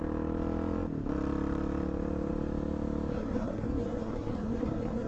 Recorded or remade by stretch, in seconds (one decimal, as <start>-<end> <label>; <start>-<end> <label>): 0.0-3.1 recorded; 3.1-5.1 remade